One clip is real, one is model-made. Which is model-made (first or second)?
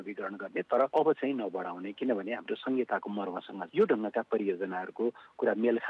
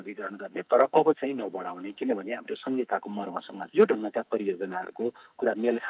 second